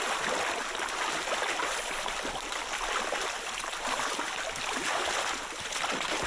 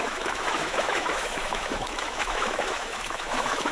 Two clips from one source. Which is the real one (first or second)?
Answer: first